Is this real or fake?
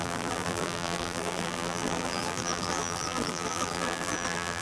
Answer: fake